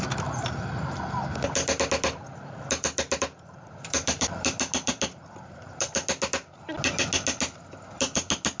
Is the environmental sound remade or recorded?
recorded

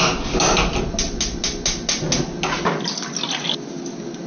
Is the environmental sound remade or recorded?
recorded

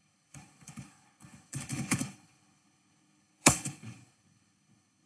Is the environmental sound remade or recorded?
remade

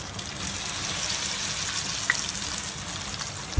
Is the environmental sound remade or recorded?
recorded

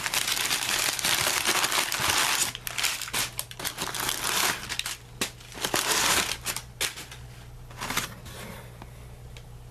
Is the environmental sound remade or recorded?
recorded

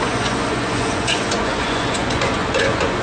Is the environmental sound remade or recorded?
remade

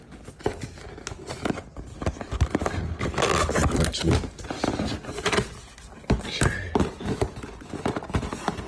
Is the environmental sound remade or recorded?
recorded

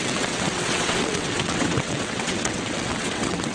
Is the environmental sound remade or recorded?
remade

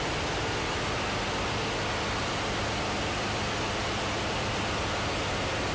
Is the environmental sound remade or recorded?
recorded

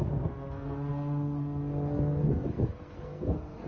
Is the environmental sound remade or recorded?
remade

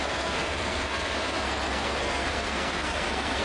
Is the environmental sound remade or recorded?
remade